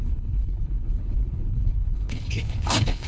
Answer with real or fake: fake